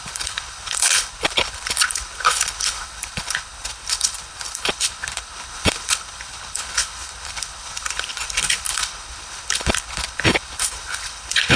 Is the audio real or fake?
fake